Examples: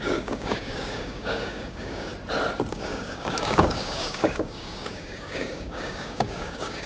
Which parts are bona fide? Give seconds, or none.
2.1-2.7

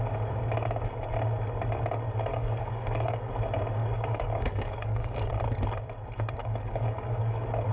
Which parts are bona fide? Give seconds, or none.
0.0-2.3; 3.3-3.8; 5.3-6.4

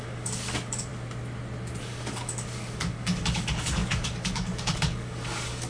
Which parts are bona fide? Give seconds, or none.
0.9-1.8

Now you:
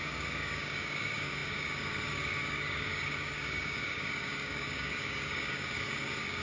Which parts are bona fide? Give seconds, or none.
none